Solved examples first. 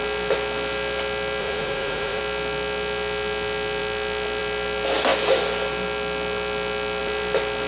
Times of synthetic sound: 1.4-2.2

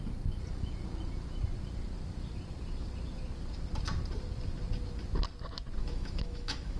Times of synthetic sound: 5.8-6.8

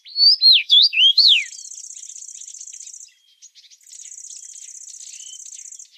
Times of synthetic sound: 0.6-1.4

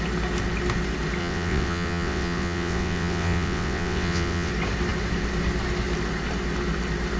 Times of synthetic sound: 1.2-4.5

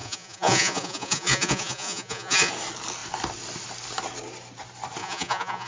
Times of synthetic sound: 0.0-2.5; 5.0-5.7

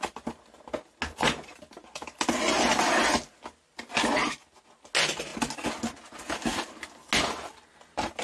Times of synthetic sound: 1.2-2.4